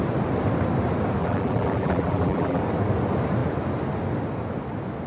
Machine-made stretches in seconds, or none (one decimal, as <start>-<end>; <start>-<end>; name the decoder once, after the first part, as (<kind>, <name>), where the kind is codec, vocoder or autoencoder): 1.2-2.6 (vocoder, BigVGAN v2)